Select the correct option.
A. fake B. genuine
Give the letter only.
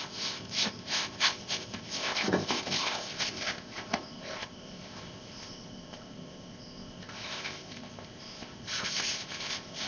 A